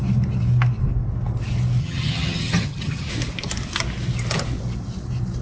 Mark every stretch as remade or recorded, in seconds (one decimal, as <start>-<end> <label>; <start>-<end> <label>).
0.0-1.8 recorded; 1.8-3.1 remade; 3.1-5.4 recorded

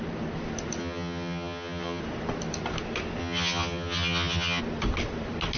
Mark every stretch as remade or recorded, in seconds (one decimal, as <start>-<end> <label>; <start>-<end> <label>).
0.0-0.8 recorded; 0.8-2.0 remade; 2.0-3.2 recorded; 3.2-4.6 remade; 4.6-5.6 recorded

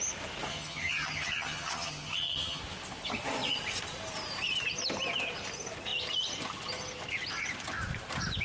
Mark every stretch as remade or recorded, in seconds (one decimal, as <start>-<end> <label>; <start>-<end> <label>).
0.0-0.5 recorded; 0.5-2.6 remade; 2.6-8.4 recorded

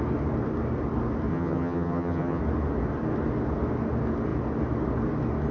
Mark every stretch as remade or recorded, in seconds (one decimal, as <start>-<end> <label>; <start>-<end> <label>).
0.0-1.3 recorded; 1.3-2.4 remade; 2.4-5.5 recorded